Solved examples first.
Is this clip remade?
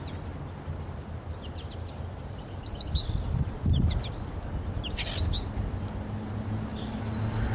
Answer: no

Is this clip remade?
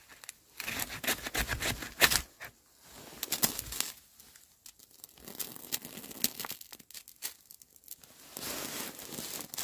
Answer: no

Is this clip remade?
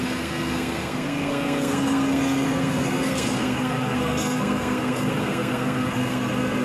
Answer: yes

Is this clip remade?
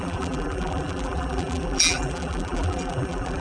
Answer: yes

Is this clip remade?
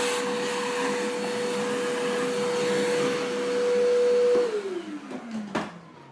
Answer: no